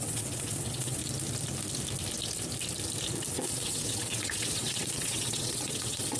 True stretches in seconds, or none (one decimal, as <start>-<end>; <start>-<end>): 1.0-3.3